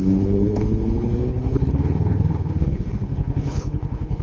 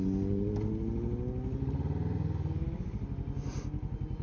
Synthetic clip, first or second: first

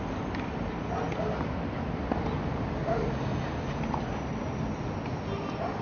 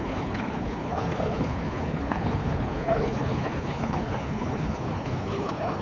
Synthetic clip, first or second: second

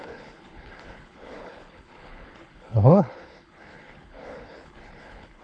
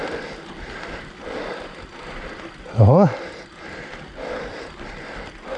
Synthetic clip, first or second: first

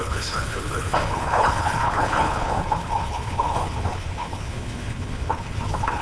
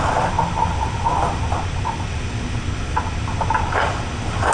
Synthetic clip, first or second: first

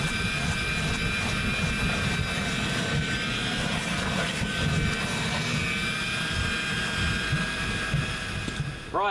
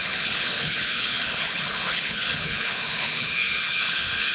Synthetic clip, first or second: second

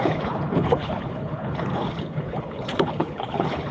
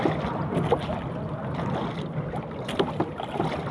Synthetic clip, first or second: first